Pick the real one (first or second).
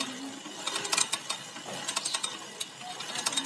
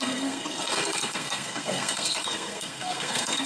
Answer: first